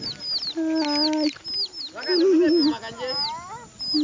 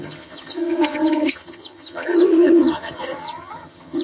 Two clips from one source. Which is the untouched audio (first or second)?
first